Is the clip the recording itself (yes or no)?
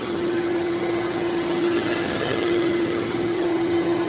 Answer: no